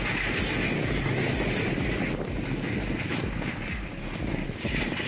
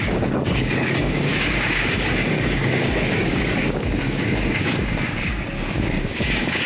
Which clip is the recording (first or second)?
first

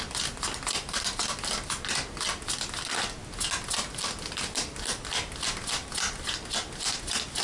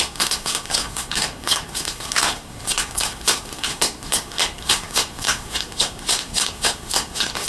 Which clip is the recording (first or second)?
first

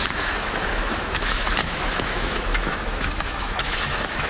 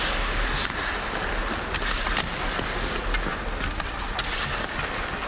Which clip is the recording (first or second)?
second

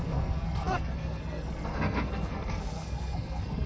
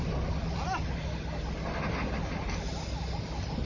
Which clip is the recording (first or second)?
second